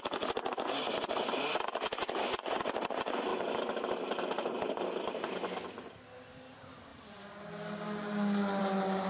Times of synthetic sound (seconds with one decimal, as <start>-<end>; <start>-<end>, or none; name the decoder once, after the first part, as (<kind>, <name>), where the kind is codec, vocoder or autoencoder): none